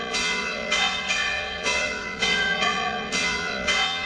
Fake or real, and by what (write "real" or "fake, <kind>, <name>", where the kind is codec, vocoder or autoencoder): fake, vocoder, Vocos